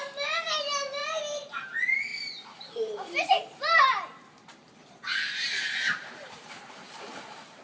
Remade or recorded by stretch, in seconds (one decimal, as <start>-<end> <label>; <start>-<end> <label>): 0.0-2.1 recorded; 2.1-6.7 remade; 6.7-7.6 recorded